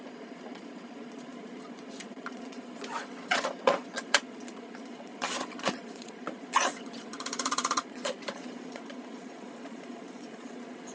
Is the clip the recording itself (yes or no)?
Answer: no